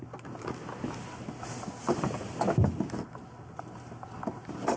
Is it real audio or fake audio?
real